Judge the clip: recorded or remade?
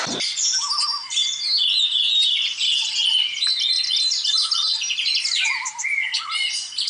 recorded